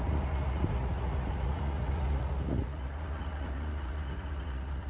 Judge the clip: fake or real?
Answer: fake